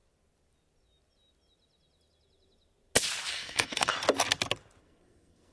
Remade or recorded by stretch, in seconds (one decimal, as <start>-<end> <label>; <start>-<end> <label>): 0.0-3.3 recorded; 3.3-3.9 remade; 3.9-4.8 recorded; 4.8-5.5 remade